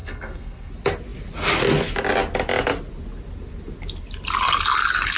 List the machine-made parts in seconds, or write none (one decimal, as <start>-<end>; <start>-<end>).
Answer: 0.0-0.7